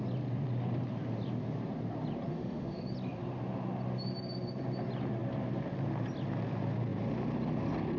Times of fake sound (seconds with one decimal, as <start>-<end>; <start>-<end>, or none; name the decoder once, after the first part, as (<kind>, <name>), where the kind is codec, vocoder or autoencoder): 2.3-2.8 (autoencoder, DAC-VAE)